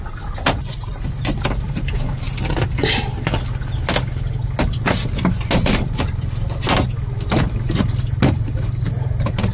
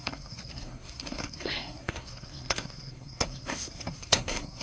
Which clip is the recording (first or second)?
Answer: first